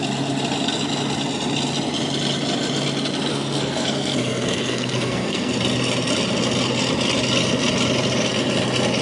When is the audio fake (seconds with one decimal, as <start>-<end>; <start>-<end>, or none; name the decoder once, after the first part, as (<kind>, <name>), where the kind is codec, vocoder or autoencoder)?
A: 3.3-5.5 (codec, SNAC)

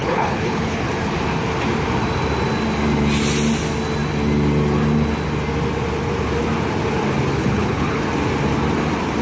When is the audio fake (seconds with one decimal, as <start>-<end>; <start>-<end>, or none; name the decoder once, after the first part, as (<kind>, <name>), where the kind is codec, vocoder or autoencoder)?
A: 0.0-0.9 (codec, HILCodec); 7.3-8.0

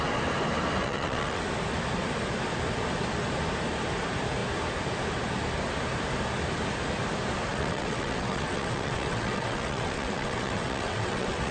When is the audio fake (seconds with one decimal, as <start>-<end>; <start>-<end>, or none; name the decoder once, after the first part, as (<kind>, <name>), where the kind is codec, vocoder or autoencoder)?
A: 0.8-1.4 (vocoder, WaveNeXt); 7.5-11.5

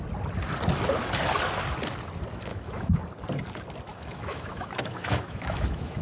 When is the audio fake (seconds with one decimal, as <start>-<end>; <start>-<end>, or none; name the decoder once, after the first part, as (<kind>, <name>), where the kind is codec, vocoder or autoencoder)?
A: 2.5-3.0 (autoencoder, DAC-VAE); 3.9-6.0

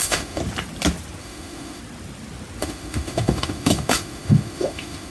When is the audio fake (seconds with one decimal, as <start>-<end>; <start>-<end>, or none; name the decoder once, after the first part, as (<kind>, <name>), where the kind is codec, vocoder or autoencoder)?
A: 0.0-0.4 (autoencoder, DAC-VAE); 1.2-1.8; 2.6-5.1

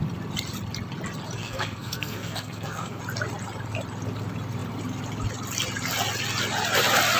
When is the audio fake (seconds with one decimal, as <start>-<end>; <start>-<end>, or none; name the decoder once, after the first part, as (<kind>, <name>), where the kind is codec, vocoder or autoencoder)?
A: 1.4-3.0 (codec, SNAC)

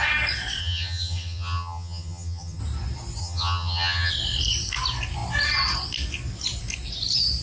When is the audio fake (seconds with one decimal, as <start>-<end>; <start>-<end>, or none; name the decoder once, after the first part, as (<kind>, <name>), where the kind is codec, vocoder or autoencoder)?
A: 0.6-2.6 (vocoder, HiFi-GAN); 3.2-4.1

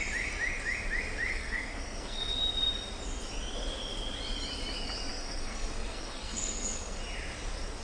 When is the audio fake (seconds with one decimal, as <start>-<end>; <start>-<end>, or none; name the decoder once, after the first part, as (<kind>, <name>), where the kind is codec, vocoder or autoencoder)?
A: 1.3-2.3 (codec, SNAC); 5.1-7.0